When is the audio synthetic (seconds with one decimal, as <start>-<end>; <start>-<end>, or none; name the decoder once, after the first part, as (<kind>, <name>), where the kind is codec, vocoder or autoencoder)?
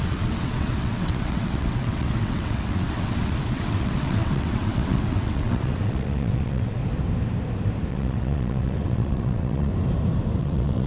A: 0.0-6.8 (vocoder, WaveNeXt); 7.9-9.7; 10.4-10.9